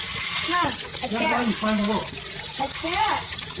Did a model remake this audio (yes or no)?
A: yes